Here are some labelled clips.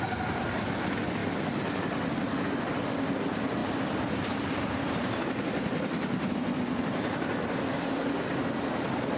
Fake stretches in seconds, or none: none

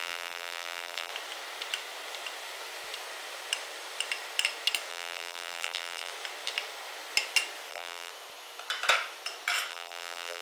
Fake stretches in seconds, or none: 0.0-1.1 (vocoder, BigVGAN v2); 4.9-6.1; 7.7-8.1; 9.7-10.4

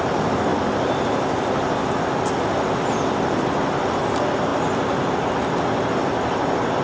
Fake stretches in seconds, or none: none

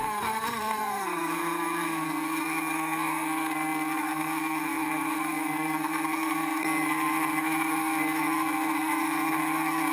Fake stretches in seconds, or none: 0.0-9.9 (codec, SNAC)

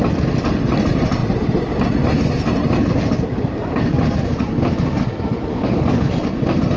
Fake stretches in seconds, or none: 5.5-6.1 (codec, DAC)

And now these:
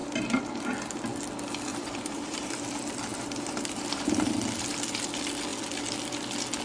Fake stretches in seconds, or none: 1.7-2.5 (vocoder, BigVGAN v2); 3.1-4.0

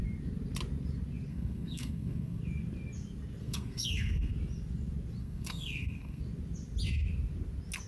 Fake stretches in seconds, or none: 1.3-2.4 (codec, SNAC); 3.4-4.3; 5.2-6.2

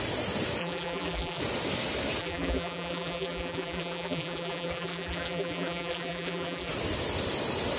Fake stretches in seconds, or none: 0.6-1.4 (vocoder, BigVGAN v2); 2.2-6.7